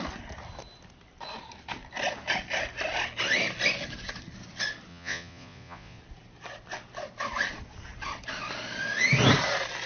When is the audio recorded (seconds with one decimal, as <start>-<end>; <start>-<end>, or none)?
0.0-4.9; 6.0-9.9